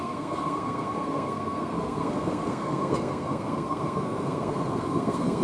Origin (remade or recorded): remade